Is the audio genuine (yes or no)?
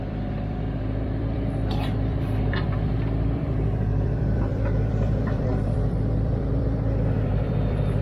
no